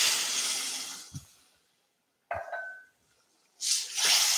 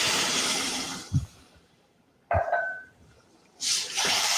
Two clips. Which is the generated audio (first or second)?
second